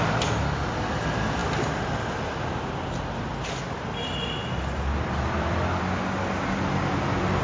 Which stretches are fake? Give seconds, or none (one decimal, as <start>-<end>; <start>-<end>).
none